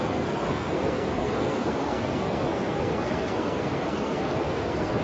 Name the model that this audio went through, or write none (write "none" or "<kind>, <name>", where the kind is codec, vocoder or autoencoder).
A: codec, SNAC